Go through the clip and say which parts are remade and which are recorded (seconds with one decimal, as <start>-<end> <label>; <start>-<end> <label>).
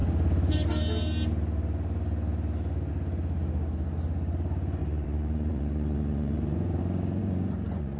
0.0-4.8 recorded; 4.8-6.8 remade; 6.8-7.2 recorded; 7.2-8.0 remade